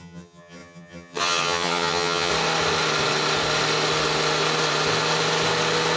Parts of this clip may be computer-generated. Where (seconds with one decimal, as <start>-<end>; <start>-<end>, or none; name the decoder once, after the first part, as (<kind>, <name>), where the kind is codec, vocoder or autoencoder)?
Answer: 0.0-2.3 (vocoder, HiFi-GAN)